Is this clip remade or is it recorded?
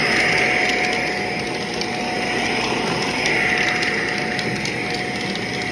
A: recorded